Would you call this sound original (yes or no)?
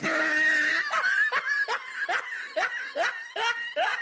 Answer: yes